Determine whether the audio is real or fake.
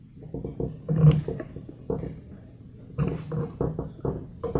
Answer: real